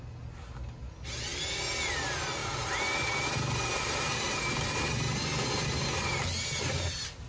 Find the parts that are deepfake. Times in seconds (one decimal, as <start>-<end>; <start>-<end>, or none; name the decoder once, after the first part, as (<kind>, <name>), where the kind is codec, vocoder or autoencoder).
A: none